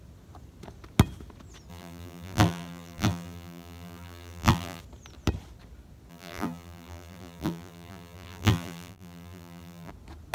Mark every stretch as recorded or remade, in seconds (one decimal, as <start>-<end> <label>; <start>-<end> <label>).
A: 0.0-1.7 recorded; 1.7-4.8 remade; 4.8-6.1 recorded; 6.1-9.9 remade; 9.9-10.3 recorded